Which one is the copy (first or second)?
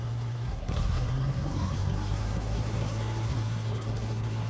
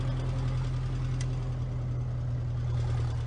first